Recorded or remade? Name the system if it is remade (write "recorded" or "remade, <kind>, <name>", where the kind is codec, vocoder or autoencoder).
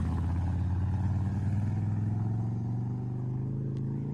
recorded